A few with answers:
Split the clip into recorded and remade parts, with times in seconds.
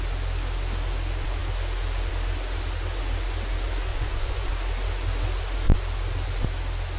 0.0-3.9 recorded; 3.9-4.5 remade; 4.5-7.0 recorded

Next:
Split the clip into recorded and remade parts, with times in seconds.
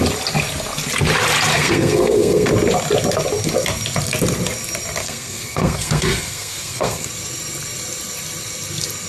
0.0-1.5 recorded; 1.5-2.5 remade; 2.5-5.0 recorded; 5.0-7.1 remade; 7.1-9.1 recorded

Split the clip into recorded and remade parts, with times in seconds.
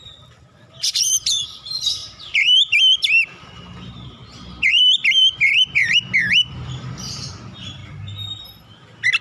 0.0-7.8 remade; 7.8-9.2 recorded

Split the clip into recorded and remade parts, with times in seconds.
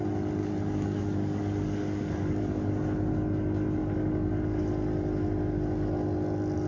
0.0-0.4 recorded; 0.4-2.7 remade; 2.7-3.8 recorded; 3.8-4.6 remade; 4.6-6.7 recorded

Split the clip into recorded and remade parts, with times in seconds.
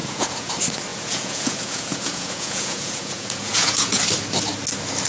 0.0-0.5 remade; 0.5-0.9 recorded; 0.9-4.0 remade; 4.0-5.1 recorded